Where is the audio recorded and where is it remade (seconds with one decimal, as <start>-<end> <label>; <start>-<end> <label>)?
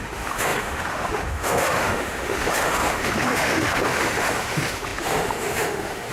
0.0-6.1 remade